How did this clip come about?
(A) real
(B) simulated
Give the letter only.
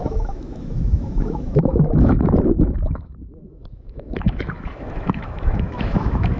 B